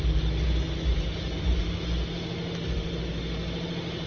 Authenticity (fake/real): real